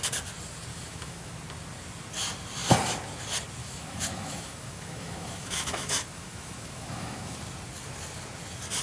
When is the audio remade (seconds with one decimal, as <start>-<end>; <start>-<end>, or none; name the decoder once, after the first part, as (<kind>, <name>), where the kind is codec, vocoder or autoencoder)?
0.7-1.3 (autoencoder, DAC-VAE); 3.6-7.4